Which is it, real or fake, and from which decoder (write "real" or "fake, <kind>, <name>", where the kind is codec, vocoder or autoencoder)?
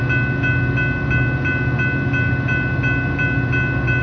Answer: real